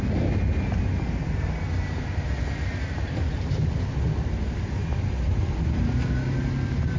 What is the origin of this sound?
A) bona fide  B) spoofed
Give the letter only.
A